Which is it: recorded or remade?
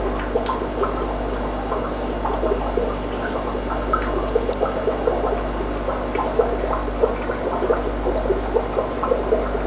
recorded